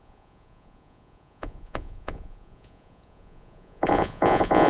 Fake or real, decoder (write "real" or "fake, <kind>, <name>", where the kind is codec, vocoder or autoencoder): fake, vocoder, Vocos